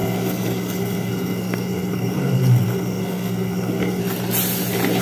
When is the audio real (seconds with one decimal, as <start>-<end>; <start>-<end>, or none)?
4.0-5.0